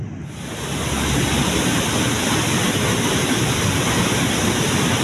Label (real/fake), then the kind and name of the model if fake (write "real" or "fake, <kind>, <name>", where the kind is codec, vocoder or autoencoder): real